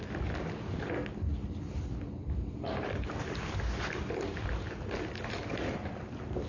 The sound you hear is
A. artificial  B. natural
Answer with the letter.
B